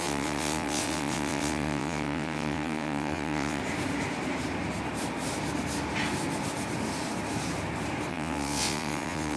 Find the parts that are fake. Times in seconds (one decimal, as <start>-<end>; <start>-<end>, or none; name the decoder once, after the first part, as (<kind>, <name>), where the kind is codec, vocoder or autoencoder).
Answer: 0.0-3.6 (vocoder, WaveNeXt); 8.1-9.4